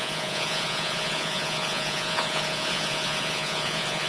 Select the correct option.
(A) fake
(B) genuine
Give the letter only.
A